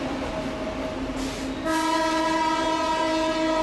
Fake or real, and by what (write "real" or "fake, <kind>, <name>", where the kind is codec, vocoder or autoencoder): real